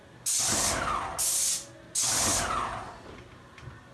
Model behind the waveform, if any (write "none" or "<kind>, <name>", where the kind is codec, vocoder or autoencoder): none